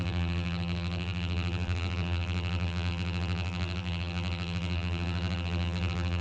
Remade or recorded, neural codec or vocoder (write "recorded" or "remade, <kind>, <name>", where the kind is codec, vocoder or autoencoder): remade, vocoder, BigVGAN v2